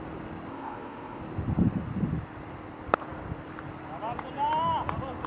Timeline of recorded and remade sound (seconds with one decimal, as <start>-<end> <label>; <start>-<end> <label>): 0.0-0.5 recorded; 0.5-1.2 remade; 1.2-5.3 recorded